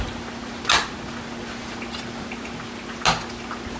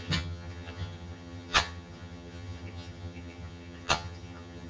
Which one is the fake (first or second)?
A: second